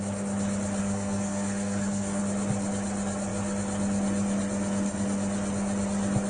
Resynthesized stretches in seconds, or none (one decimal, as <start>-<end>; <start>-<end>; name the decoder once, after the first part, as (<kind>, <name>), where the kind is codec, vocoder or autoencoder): 0.8-2.2 (codec, SNAC)